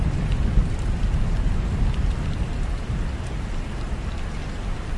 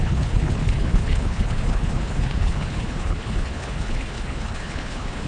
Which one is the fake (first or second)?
second